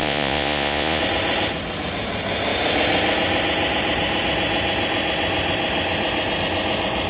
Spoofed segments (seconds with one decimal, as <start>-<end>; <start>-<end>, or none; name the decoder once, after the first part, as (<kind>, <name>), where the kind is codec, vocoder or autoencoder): 0.0-1.0 (vocoder, Vocos)